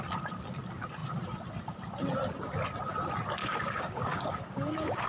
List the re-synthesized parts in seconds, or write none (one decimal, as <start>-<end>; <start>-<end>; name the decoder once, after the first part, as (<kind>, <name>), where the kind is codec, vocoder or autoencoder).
3.4-5.1 (codec, DAC)